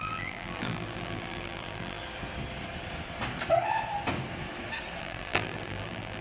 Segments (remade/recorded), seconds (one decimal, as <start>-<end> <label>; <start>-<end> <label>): 0.0-2.0 remade; 2.0-5.0 recorded; 5.0-6.2 remade